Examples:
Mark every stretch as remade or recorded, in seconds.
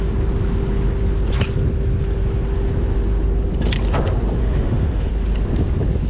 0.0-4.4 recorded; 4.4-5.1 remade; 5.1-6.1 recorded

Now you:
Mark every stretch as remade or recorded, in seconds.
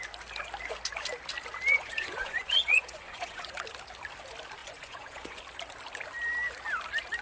0.0-1.7 recorded; 1.7-3.5 remade; 3.5-4.6 recorded; 4.6-5.4 remade; 5.4-7.2 recorded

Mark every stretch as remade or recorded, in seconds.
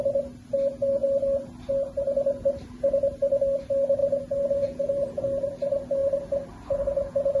0.0-4.0 recorded; 4.0-5.2 remade; 5.2-7.4 recorded